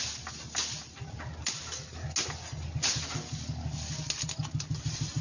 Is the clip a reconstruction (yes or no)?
no